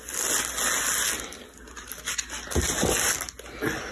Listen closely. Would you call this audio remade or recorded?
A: recorded